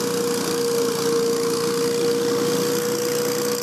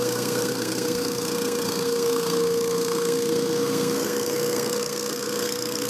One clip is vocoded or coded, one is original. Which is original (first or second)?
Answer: first